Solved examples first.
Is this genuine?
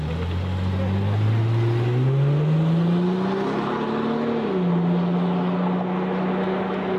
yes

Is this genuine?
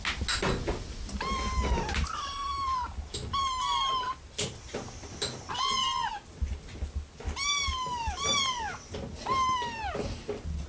yes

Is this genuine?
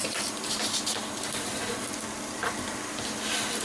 yes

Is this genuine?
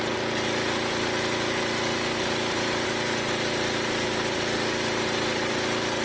yes